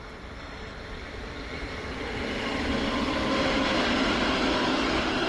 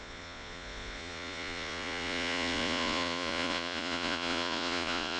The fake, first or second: second